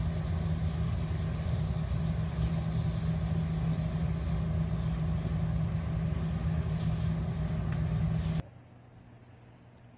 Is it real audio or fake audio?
real